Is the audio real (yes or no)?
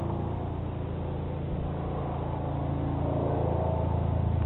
yes